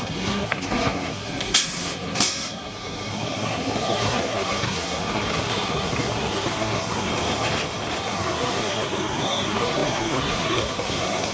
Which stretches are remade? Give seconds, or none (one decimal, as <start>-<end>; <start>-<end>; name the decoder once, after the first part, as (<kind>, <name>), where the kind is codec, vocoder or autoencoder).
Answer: 0.0-7.1 (codec, SNAC); 8.0-11.3